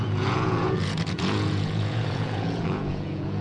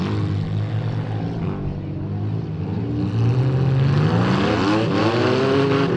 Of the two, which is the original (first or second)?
second